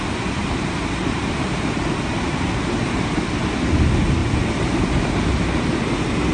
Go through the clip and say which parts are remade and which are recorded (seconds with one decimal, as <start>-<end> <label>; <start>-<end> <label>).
0.0-0.4 recorded; 0.4-3.1 remade; 3.1-4.2 recorded; 4.2-4.9 remade; 4.9-6.3 recorded